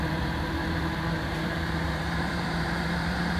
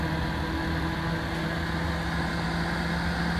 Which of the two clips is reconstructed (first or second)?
first